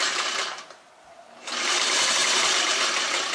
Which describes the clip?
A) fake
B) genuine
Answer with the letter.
A